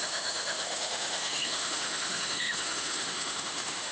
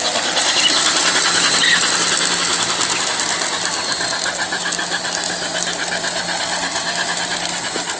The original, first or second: second